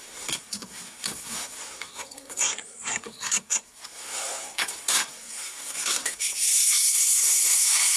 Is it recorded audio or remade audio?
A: remade